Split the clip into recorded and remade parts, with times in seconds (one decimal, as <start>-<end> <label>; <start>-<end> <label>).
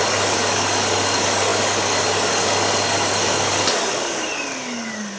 0.0-5.2 remade